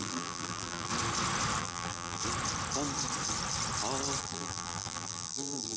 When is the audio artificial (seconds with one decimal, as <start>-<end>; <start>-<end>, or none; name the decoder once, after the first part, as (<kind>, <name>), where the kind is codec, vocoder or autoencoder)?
0.0-0.9 (vocoder, BigVGAN v2); 1.6-2.2; 4.2-5.8